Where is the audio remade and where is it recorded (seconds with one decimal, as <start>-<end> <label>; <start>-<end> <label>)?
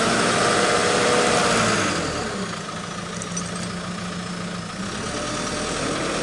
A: 0.0-6.2 recorded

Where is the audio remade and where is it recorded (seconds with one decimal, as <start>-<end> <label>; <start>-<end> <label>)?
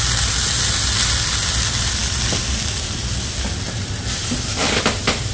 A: 0.0-5.3 recorded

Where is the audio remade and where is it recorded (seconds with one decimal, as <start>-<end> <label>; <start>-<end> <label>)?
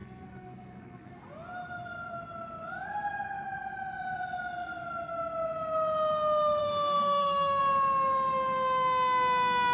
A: 0.0-1.1 remade; 1.1-6.6 recorded; 6.6-7.6 remade; 7.6-9.7 recorded